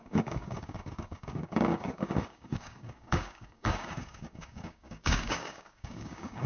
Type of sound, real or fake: fake